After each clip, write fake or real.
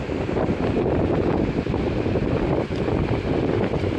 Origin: fake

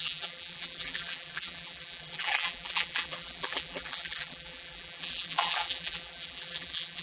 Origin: fake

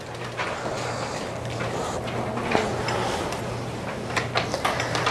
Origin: real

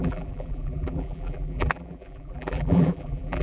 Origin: fake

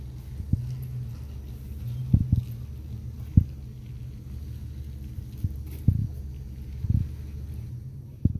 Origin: real